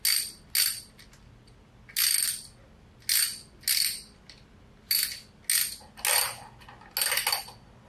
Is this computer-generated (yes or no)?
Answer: no